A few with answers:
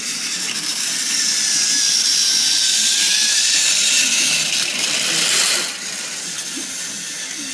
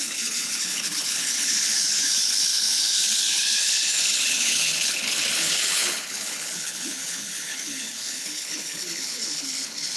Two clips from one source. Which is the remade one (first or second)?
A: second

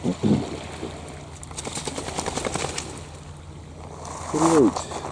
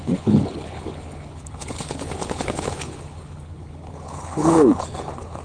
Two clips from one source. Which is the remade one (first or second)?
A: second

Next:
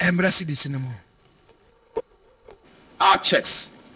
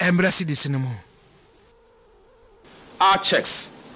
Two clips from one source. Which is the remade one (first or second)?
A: first